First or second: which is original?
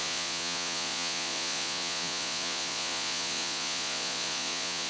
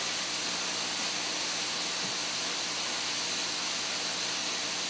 second